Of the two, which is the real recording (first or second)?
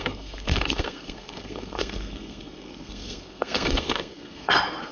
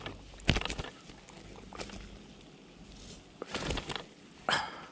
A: second